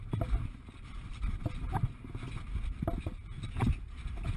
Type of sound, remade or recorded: recorded